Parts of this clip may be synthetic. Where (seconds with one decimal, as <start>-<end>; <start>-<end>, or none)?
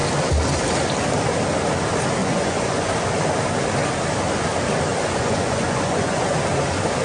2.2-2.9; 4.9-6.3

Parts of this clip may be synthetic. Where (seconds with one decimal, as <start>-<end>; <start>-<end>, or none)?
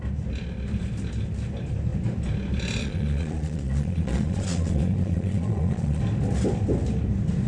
2.8-6.0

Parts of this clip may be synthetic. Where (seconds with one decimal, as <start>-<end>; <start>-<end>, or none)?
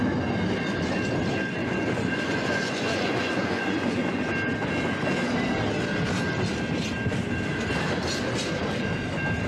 1.6-4.3